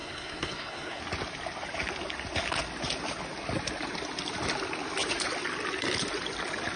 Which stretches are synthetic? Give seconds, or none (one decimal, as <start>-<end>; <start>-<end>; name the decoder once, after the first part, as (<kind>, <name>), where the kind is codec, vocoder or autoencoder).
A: 0.0-1.0 (codec, SNAC)